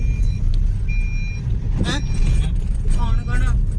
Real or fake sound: real